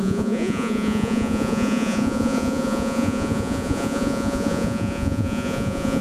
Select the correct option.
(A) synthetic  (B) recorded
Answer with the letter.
A